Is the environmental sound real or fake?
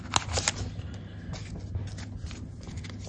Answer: real